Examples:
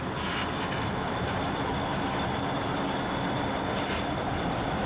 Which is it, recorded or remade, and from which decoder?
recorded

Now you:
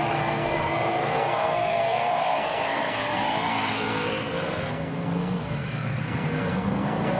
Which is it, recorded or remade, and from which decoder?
remade, codec, SNAC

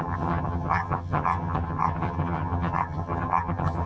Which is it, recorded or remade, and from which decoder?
remade, vocoder, HiFi-GAN